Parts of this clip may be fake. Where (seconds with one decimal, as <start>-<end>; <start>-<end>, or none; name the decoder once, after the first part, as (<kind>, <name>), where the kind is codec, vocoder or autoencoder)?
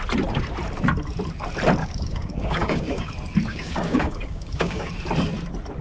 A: 1.8-3.1 (codec, DAC); 3.5-4.9